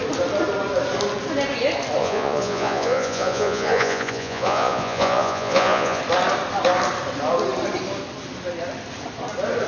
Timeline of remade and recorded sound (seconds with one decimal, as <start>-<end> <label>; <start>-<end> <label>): 0.0-2.0 recorded; 2.0-6.0 remade; 6.0-9.7 recorded